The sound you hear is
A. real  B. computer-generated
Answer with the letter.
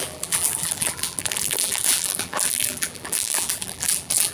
B